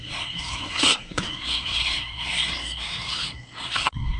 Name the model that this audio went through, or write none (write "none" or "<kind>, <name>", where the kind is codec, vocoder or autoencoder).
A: codec, SNAC